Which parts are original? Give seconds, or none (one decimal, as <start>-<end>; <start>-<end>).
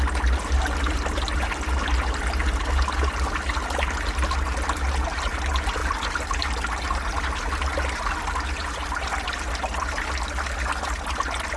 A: 0.0-11.6